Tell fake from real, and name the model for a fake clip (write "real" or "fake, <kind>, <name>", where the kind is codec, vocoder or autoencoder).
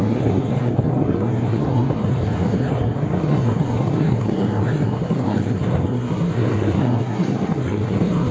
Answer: fake, codec, SNAC